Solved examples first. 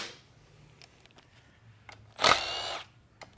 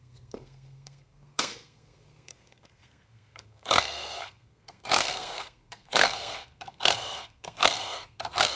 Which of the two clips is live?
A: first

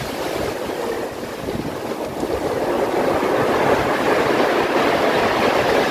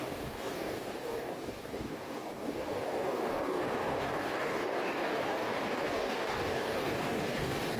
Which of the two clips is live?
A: first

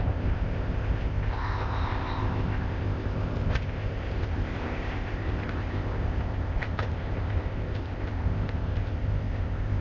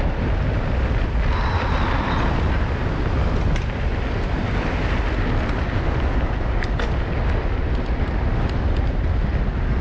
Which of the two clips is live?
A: second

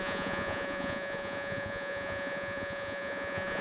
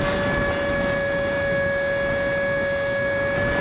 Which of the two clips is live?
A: second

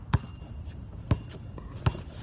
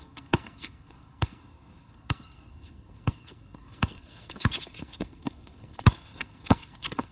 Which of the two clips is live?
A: first